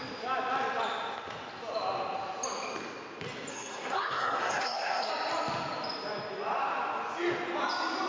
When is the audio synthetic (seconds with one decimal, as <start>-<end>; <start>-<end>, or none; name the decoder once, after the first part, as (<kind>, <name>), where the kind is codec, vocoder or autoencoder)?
3.5-5.1 (codec, SNAC)